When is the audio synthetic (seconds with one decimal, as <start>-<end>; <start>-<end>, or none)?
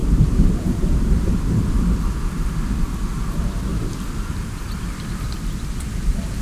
0.0-1.3